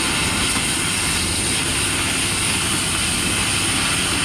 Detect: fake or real real